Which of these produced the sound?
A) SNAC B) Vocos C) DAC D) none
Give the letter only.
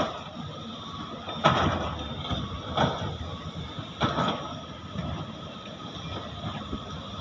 D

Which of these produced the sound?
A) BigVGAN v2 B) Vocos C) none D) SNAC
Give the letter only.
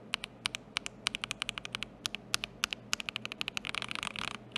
C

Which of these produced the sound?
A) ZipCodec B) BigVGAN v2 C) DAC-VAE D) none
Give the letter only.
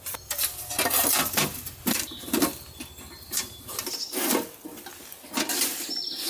D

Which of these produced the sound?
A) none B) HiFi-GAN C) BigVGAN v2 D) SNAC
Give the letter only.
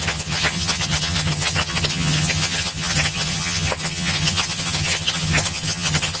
B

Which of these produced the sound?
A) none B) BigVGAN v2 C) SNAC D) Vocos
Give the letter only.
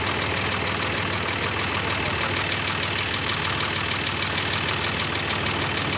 A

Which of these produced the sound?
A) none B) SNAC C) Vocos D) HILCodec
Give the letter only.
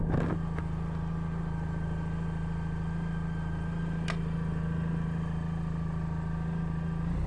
A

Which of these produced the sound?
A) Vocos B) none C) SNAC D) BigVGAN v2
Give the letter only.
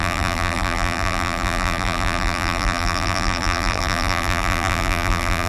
D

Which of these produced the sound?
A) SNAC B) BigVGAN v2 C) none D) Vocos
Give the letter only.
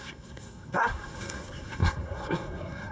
A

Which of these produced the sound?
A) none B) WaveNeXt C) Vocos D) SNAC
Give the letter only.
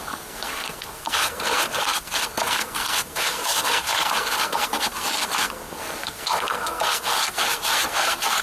D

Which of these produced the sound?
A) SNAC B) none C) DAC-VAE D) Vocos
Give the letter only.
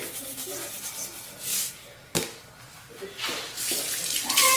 B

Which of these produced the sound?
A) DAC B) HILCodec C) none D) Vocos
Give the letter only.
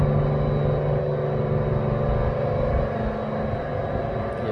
C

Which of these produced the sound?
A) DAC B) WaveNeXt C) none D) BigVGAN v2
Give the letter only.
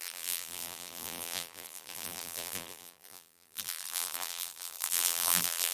D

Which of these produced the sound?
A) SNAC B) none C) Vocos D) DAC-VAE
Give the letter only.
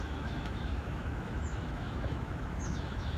D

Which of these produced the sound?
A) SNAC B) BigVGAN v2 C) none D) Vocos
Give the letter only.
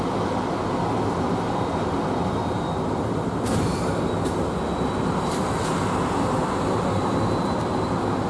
C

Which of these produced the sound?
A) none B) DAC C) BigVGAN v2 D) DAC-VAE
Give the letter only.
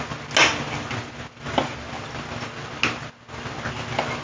A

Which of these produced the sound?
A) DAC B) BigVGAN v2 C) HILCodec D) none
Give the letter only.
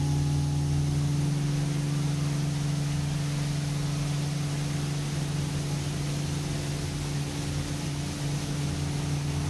D